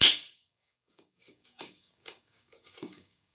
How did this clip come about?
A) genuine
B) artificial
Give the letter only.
B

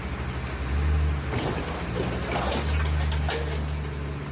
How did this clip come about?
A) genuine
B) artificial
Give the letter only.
A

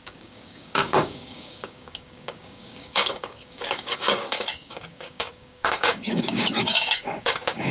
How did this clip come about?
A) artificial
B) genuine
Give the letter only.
A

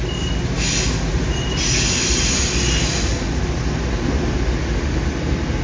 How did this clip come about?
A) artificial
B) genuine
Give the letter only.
B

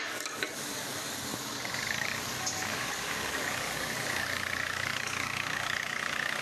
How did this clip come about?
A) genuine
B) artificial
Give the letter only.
B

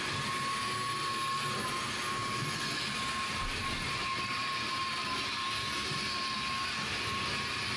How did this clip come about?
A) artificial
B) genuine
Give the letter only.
B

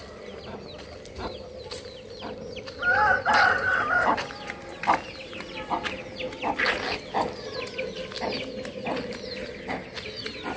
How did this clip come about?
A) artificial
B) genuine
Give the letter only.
B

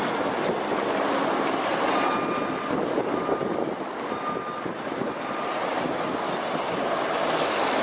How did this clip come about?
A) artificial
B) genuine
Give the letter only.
B